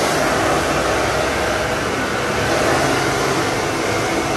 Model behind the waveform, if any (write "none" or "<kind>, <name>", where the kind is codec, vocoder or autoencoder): none